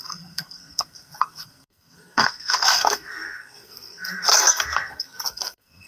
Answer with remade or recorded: remade